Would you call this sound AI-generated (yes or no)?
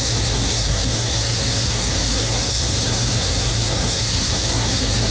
yes